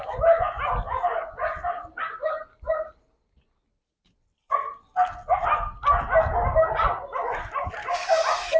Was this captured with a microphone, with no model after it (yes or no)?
yes